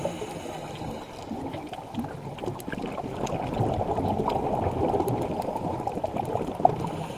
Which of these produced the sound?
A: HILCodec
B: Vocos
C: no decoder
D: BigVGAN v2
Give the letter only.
C